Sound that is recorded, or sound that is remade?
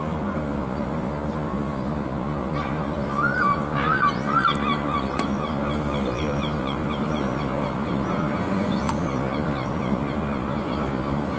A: remade